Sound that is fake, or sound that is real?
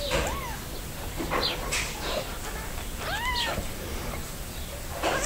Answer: real